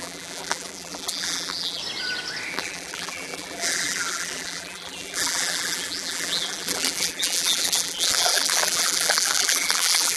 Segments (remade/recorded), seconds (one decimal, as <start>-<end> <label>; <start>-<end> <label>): 0.0-1.8 remade; 1.8-2.5 recorded; 2.5-10.2 remade